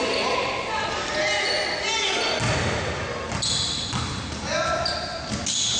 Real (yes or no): yes